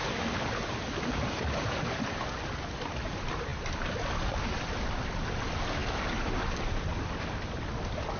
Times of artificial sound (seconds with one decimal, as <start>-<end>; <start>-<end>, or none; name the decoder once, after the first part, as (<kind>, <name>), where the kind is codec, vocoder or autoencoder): none